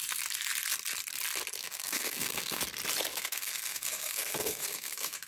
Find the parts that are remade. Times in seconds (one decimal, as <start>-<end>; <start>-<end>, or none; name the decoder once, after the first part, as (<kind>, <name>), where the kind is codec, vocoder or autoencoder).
1.6-2.6 (codec, SNAC); 3.1-5.3